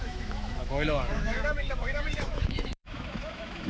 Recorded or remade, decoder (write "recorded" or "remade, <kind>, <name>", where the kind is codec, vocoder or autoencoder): remade, autoencoder, DAC-VAE